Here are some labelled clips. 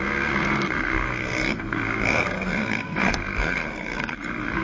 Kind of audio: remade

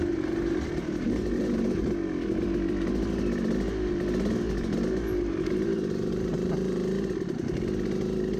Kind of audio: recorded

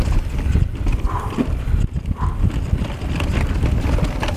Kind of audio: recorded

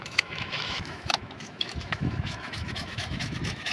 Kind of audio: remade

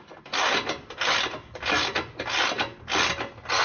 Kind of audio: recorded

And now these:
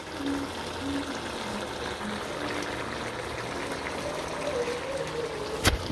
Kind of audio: recorded